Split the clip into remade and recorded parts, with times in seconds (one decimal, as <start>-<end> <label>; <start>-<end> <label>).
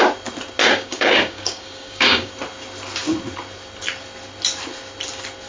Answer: 0.0-0.6 recorded; 0.6-2.3 remade; 2.3-5.5 recorded